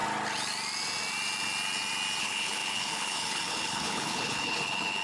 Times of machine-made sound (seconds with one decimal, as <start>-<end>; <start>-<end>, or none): 2.2-5.0